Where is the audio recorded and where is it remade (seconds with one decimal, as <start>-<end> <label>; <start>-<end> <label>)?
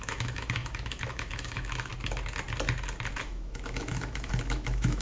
0.0-1.9 remade; 1.9-3.2 recorded; 3.2-5.0 remade